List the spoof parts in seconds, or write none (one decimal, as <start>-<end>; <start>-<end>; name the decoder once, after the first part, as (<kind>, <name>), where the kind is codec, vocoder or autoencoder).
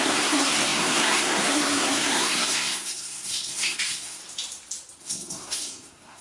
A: 0.0-4.2 (codec, SNAC); 5.0-6.2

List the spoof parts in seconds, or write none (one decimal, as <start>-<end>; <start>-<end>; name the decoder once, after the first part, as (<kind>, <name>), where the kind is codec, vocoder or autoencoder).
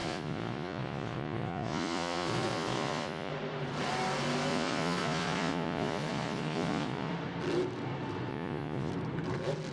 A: 0.0-3.3 (vocoder, Vocos); 4.5-7.1; 8.3-8.9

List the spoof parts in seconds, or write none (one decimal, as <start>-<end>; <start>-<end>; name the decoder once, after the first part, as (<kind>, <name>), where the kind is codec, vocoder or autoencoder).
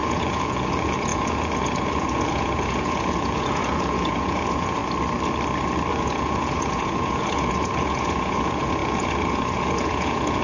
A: 0.0-4.8 (vocoder, Vocos); 5.9-10.4